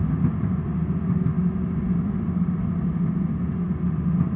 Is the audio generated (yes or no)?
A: no